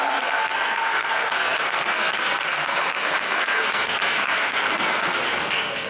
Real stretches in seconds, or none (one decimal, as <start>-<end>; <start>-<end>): none